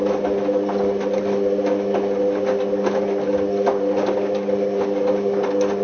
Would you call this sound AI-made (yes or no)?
no